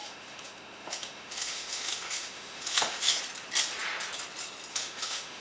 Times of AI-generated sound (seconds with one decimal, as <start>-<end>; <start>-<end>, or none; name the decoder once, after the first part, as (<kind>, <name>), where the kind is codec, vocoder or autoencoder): 0.0-3.2 (autoencoder, DAC-VAE); 4.7-5.4